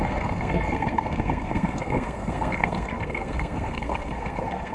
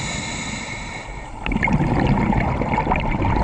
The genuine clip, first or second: second